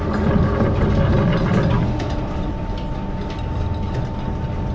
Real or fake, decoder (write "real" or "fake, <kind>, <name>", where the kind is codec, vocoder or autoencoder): real